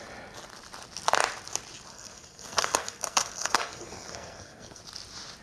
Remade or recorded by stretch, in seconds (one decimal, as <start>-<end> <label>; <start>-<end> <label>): 0.0-1.9 recorded; 1.9-4.8 remade; 4.8-5.4 recorded